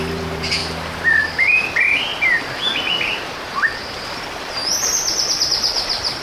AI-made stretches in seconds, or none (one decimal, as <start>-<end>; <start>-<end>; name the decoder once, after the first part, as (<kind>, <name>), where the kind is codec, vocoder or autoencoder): 0.0-0.6 (vocoder, BigVGAN v2); 1.4-2.1; 3.1-4.6